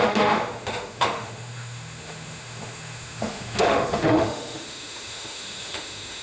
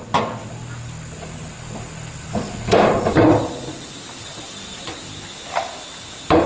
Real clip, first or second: second